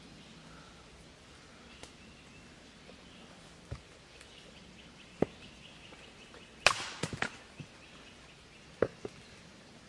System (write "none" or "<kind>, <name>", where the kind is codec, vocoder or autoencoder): none